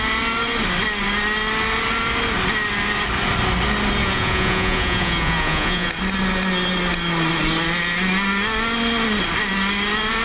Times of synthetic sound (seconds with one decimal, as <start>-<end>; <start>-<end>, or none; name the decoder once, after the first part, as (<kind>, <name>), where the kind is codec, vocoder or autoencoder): 4.0-5.9 (vocoder, Vocos)